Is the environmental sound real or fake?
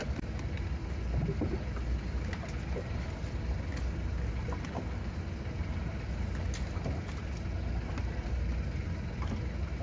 real